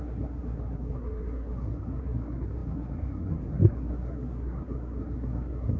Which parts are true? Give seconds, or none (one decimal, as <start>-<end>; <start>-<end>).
none